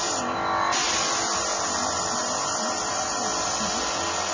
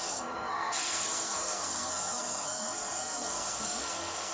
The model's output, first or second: second